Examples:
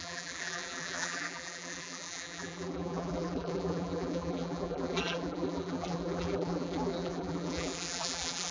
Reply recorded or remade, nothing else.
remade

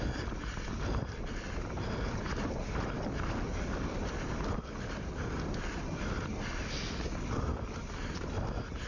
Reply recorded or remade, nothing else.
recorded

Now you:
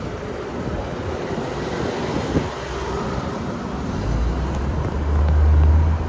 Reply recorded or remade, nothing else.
recorded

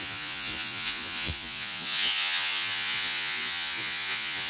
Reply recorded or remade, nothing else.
remade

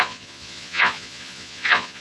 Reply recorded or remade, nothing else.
remade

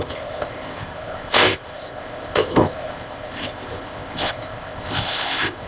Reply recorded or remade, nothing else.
remade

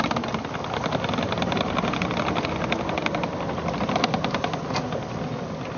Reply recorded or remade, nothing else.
recorded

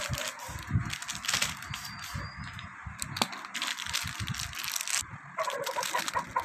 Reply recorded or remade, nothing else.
recorded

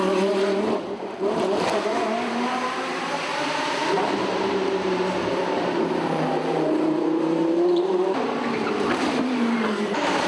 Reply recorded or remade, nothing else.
remade